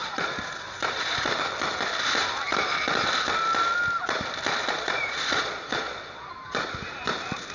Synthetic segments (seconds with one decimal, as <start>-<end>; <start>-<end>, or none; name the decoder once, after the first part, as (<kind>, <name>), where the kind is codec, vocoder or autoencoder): 0.0-1.4 (vocoder, Vocos); 4.6-6.3